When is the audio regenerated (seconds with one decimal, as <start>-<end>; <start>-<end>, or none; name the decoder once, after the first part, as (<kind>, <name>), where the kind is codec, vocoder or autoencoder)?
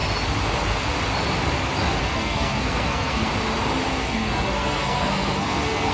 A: 2.0-3.3 (codec, SNAC); 3.9-5.9